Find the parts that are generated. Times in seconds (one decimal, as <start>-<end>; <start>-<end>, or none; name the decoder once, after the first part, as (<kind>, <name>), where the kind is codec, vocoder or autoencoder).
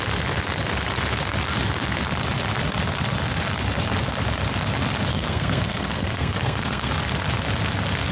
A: 5.1-6.9 (codec, SNAC)